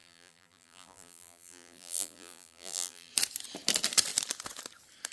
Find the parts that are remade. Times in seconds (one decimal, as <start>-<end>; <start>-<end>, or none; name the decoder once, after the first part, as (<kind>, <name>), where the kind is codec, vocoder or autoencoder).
0.0-3.1 (vocoder, BigVGAN v2)